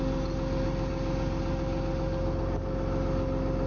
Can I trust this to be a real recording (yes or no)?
yes